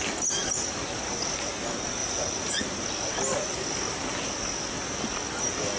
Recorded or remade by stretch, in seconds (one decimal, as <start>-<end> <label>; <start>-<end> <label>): 0.0-2.0 recorded; 2.0-2.6 remade; 2.6-5.8 recorded